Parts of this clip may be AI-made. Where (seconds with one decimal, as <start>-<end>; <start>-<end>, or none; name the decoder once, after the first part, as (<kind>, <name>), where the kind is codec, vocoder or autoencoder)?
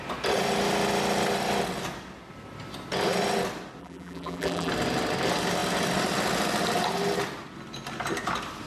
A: 3.8-4.7 (vocoder, BigVGAN v2)